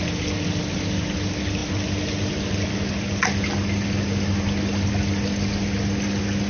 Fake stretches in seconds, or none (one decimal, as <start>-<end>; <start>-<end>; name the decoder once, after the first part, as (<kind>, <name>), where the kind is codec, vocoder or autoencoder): none